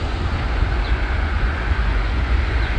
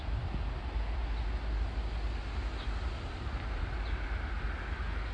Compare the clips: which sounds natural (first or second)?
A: second